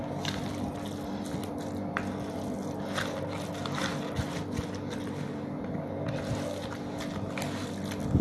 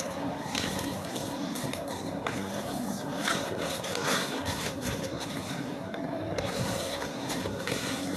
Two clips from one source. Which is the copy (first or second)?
second